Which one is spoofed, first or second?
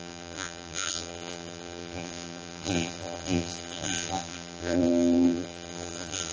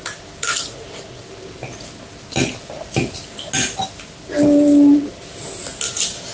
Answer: first